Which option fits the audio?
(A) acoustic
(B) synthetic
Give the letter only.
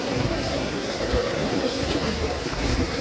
B